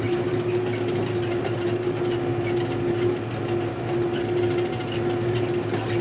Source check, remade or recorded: recorded